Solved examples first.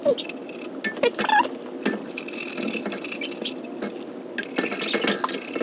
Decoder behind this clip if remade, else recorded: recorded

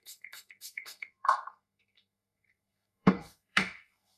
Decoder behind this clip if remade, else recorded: remade, codec, SNAC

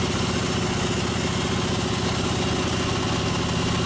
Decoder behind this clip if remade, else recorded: recorded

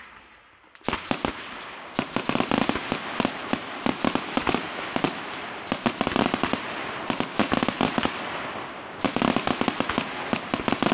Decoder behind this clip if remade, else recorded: recorded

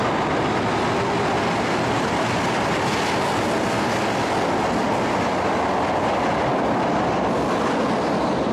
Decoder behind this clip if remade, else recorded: recorded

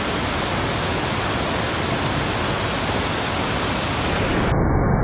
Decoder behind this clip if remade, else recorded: recorded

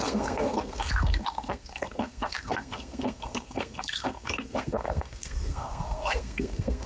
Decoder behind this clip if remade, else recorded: remade, codec, SNAC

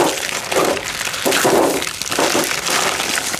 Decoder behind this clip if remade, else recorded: recorded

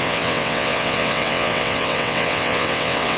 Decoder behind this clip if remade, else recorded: remade, vocoder, WaveNeXt